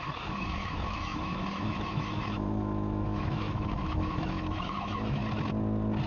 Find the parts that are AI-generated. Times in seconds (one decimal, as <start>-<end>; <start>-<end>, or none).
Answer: 0.0-5.2